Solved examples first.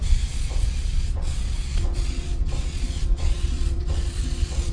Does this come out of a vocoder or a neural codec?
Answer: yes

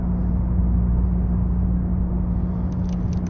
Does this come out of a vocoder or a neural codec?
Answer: no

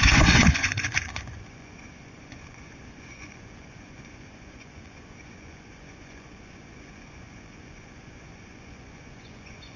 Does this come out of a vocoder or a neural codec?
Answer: yes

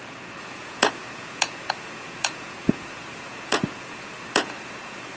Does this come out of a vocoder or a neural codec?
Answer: yes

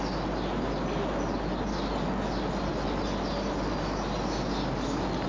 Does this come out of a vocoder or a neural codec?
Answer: no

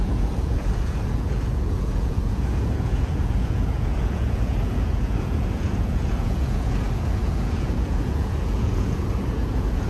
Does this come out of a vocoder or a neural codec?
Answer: yes